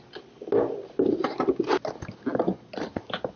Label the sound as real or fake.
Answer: real